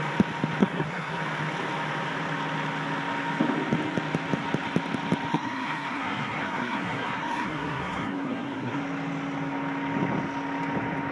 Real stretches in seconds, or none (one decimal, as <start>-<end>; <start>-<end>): 0.0-0.6; 1.2-5.3; 8.8-11.1